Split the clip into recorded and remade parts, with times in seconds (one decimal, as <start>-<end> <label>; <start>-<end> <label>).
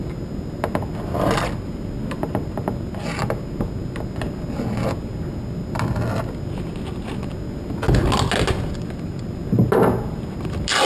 0.0-10.9 recorded